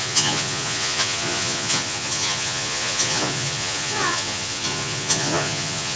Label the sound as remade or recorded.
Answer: remade